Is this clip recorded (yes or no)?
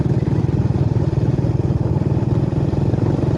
yes